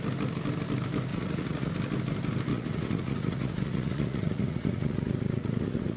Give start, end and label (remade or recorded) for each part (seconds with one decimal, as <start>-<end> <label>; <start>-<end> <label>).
0.0-1.1 recorded; 1.1-1.7 remade; 1.7-2.5 recorded; 2.5-6.0 remade